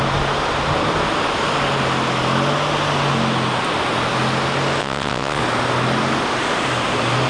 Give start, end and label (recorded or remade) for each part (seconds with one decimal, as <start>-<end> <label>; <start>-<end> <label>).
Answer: 0.0-4.8 recorded; 4.8-5.4 remade; 5.4-7.3 recorded